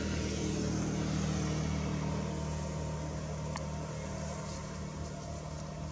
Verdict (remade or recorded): recorded